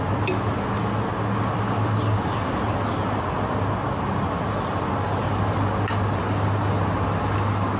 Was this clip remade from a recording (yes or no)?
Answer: no